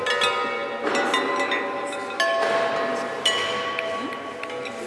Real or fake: real